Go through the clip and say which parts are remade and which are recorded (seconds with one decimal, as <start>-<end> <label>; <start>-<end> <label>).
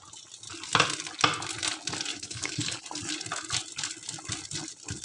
0.0-2.1 recorded; 2.1-2.8 remade; 2.8-5.0 recorded